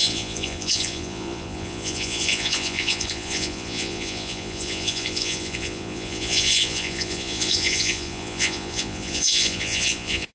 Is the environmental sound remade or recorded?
remade